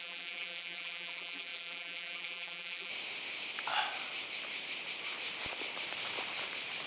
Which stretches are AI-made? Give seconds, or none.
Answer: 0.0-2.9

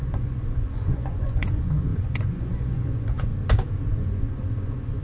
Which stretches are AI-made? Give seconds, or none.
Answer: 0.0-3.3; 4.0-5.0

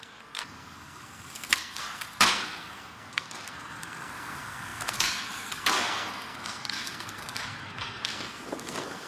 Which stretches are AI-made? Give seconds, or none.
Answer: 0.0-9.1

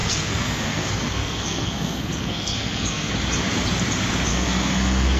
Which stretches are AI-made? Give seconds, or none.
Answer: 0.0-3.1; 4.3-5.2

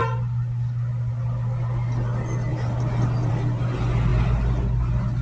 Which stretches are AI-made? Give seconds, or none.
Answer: none

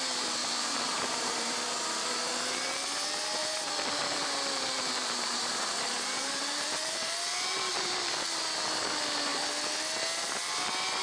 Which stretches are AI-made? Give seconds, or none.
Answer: 0.4-1.6; 3.4-8.1

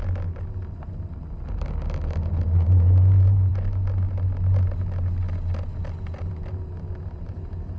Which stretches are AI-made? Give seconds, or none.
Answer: none